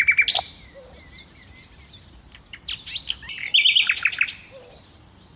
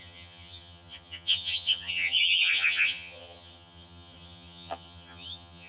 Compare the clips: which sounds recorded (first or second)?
first